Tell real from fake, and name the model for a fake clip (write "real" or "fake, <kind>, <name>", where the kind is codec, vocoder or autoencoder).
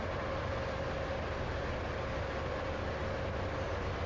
real